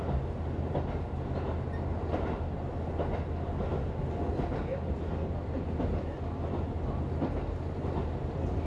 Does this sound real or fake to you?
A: real